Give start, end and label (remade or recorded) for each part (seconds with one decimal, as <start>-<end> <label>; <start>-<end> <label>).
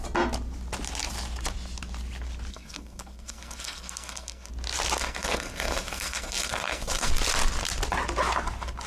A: 0.0-2.5 recorded; 2.5-4.5 remade; 4.5-5.0 recorded; 5.0-7.1 remade; 7.1-8.9 recorded